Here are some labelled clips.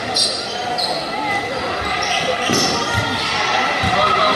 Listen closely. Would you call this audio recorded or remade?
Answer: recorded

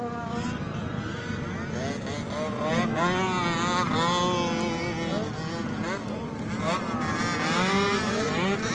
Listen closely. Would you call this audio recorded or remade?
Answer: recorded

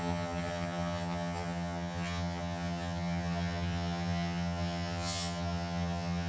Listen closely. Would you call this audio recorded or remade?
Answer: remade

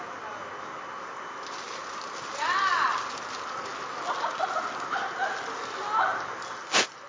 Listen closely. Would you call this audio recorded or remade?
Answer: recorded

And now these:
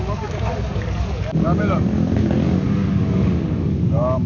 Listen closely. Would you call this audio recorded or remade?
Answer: remade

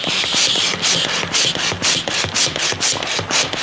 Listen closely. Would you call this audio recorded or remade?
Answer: recorded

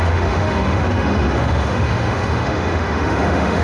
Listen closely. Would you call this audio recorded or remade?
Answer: remade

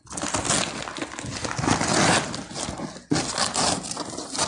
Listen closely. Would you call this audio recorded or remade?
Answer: recorded